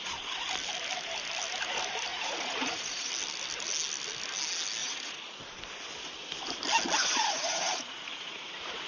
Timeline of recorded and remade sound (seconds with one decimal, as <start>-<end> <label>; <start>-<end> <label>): 0.0-2.1 recorded; 2.1-3.1 remade; 3.1-4.8 recorded; 4.8-5.4 remade; 5.4-7.0 recorded; 7.0-8.9 remade